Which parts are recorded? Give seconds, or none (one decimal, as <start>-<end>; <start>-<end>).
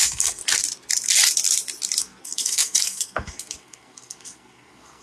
0.4-2.0